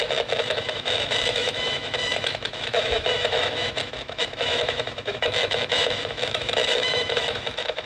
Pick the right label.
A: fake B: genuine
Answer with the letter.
A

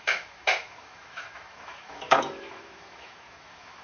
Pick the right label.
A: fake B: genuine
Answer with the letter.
A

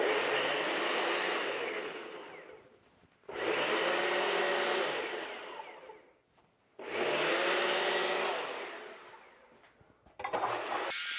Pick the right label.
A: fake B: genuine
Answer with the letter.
B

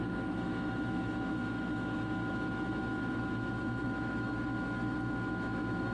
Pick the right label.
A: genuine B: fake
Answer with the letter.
B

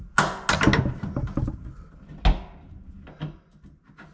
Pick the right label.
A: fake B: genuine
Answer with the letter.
B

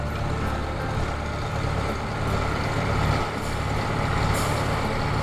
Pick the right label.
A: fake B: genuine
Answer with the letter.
B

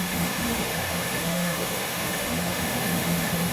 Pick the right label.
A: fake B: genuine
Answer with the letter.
A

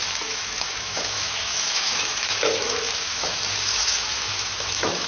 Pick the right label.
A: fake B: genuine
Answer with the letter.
A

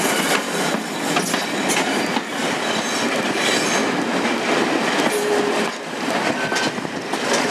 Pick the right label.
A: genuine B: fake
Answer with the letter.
A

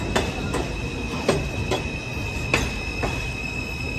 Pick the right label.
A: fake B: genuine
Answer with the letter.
B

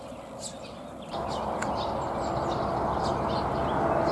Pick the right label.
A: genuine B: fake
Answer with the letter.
A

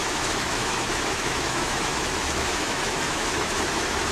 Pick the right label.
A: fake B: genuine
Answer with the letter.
A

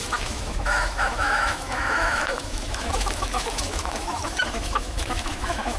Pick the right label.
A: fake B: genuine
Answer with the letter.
A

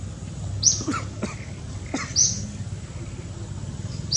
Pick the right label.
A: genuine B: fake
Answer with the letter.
A